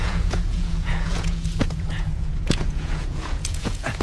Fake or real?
fake